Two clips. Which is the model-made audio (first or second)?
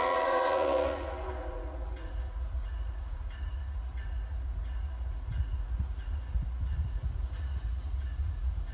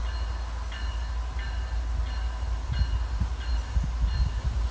first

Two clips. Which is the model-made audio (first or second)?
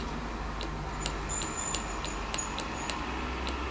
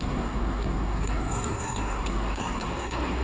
second